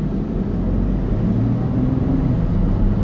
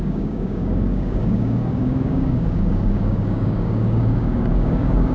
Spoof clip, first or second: second